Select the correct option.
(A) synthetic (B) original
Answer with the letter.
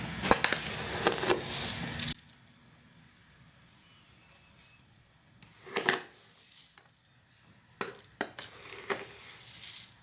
B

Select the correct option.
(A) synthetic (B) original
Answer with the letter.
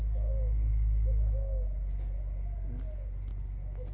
B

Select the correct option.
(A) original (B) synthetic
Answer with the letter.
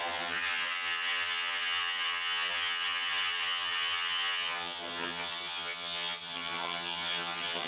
B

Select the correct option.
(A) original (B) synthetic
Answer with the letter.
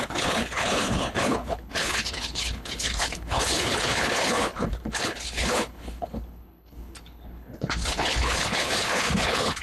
B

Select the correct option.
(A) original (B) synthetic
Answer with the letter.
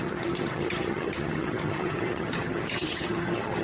B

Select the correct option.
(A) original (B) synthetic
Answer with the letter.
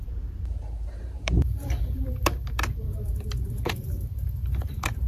B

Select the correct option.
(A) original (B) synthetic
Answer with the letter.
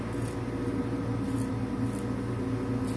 A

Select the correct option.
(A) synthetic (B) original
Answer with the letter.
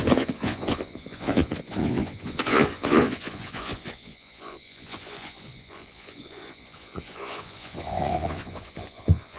A